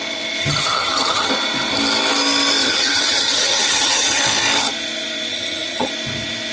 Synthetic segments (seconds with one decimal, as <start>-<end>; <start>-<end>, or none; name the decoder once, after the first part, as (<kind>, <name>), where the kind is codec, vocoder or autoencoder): 0.4-1.3 (vocoder, HiFi-GAN); 2.6-4.2; 5.3-5.9

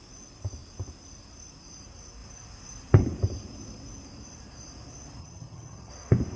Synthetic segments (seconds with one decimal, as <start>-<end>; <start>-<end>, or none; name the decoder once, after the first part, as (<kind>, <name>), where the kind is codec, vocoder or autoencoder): 5.2-5.9 (vocoder, HiFi-GAN)

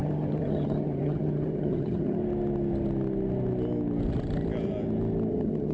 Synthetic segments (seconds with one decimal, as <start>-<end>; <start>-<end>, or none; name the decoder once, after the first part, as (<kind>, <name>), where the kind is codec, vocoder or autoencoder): 0.0-2.2 (vocoder, HiFi-GAN); 5.3-5.7

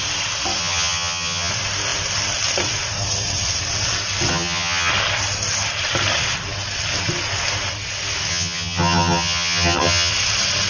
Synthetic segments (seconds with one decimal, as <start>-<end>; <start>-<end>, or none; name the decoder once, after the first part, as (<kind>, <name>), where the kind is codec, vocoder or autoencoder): 0.6-1.5 (vocoder, HiFi-GAN); 4.3-4.9; 8.3-10.1

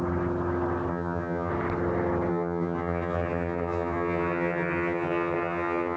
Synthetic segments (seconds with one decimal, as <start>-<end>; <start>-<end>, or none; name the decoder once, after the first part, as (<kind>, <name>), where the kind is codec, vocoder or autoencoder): 0.9-1.5 (vocoder, HiFi-GAN); 2.3-6.0